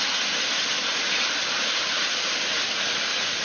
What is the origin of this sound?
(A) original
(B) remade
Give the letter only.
A